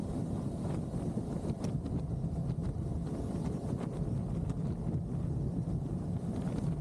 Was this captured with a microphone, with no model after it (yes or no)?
yes